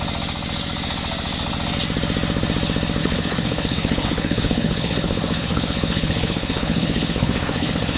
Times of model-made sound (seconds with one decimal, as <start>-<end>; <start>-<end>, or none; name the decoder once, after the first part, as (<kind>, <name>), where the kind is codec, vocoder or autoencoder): 3.0-8.0 (codec, HILCodec)